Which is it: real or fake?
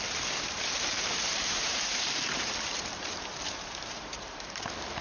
fake